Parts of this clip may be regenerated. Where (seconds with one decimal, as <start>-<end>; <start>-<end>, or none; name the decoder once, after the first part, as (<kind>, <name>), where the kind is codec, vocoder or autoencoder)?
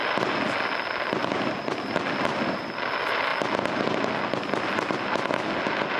none